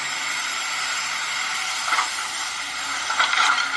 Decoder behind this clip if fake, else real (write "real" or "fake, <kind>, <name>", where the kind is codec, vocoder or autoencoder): fake, vocoder, BigVGAN v2